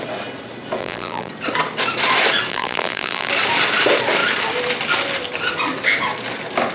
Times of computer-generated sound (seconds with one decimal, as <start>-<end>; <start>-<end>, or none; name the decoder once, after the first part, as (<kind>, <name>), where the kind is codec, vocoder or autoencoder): 0.8-1.3 (vocoder, BigVGAN v2); 2.5-3.3